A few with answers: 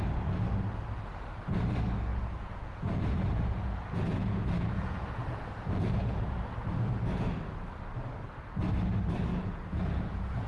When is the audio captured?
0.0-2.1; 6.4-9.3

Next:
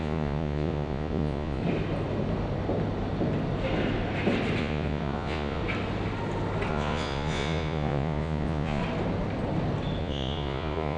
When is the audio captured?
1.6-4.6; 5.6-6.7; 8.8-10.0

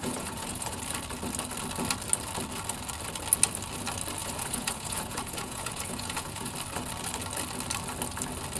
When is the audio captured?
0.8-4.2; 6.5-8.6